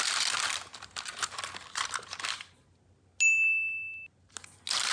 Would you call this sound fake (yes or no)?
no